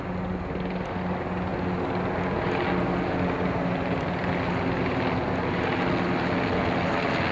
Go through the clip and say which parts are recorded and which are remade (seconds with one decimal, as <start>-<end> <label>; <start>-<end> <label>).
0.0-7.3 recorded